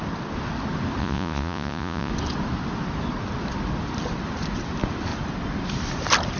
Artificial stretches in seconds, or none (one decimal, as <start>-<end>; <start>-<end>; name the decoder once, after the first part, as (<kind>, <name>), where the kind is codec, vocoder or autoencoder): 1.0-2.1 (vocoder, Vocos)